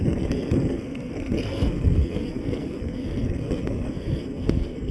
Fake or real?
fake